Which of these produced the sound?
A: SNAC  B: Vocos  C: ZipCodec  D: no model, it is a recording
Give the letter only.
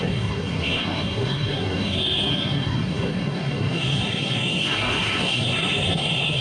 A